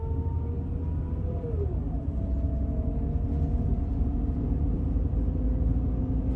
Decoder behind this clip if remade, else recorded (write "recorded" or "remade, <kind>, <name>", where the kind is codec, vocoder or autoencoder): recorded